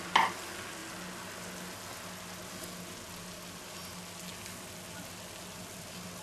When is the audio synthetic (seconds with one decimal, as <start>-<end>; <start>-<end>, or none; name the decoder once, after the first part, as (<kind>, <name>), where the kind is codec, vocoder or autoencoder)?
none